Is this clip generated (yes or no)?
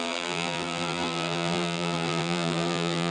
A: yes